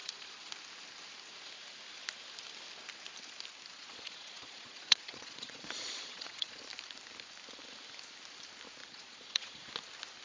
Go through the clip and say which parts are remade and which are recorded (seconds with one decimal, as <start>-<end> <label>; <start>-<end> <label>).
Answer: 0.0-0.5 remade; 0.5-3.7 recorded; 3.7-6.6 remade; 6.6-8.8 recorded; 8.8-9.7 remade; 9.7-10.2 recorded